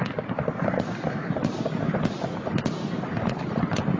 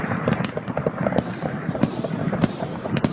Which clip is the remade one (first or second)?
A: second